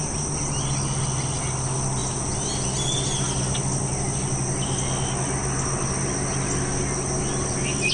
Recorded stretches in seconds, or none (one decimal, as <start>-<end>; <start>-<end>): 0.0-7.9